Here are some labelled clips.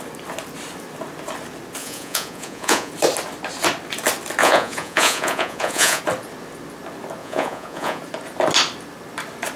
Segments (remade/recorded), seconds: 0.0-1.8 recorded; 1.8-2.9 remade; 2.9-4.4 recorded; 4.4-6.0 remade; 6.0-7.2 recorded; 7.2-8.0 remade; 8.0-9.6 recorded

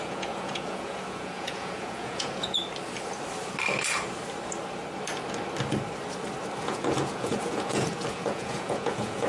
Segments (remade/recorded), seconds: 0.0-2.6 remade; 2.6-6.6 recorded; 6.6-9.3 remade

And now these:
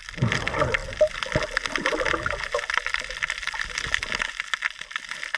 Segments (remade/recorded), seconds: 0.0-5.4 recorded